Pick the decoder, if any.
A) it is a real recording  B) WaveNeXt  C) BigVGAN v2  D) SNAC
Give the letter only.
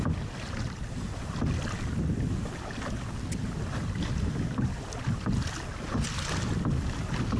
A